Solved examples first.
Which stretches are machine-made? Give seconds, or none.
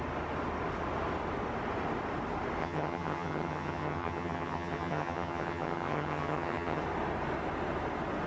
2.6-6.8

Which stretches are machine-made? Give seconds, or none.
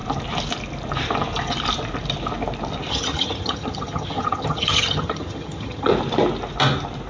2.9-5.9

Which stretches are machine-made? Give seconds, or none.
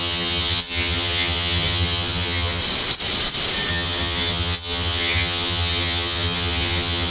0.0-2.6; 3.7-7.1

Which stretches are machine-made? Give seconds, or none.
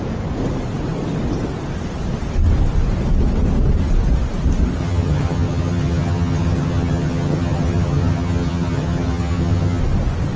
4.8-9.8